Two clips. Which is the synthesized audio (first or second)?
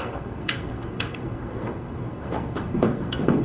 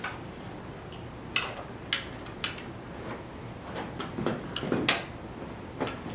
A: first